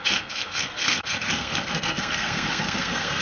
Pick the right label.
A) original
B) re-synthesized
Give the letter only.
B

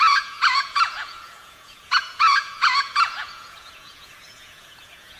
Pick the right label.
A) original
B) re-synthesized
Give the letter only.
B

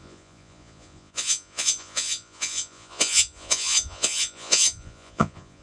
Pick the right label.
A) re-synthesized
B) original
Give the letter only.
A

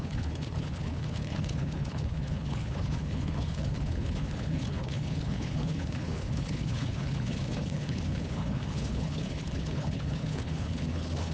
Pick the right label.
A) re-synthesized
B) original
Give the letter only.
A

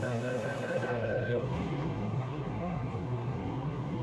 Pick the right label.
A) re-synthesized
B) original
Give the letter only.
A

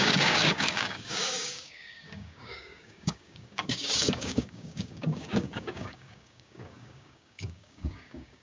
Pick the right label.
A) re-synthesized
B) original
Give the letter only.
A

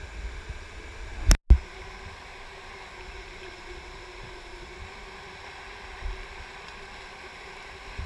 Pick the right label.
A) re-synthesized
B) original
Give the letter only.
B